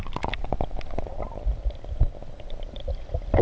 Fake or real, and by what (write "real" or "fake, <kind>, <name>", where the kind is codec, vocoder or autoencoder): real